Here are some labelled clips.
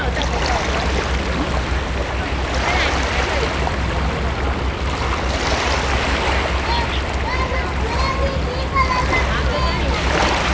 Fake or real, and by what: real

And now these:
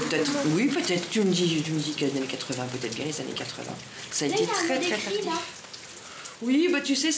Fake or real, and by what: real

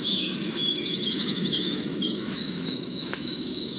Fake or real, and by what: fake, autoencoder, DAC-VAE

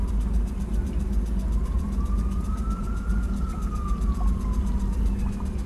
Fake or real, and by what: real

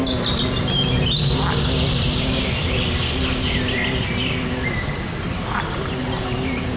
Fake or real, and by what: real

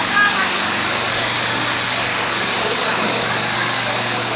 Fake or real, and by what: fake, codec, DAC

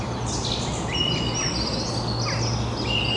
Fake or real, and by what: real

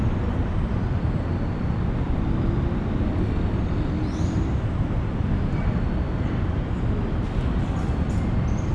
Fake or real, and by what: real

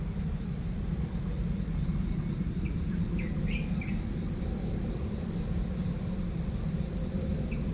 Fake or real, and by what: real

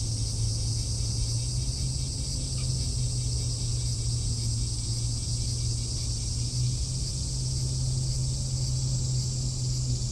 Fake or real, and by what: real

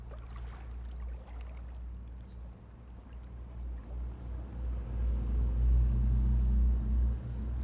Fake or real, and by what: real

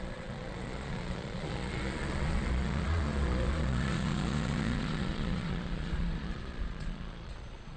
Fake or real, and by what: fake, vocoder, Vocos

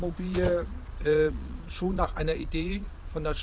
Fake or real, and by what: fake, vocoder, Vocos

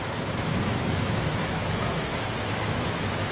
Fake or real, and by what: fake, autoencoder, DAC-VAE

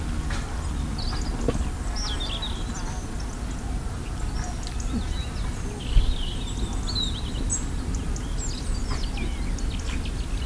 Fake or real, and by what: real